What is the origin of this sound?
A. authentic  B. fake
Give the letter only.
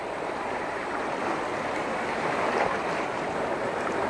A